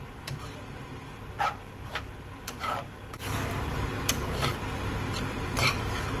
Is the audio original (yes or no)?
no